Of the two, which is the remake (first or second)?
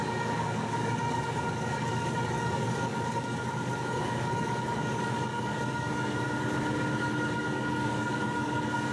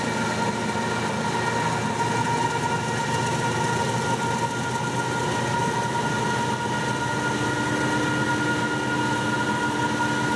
first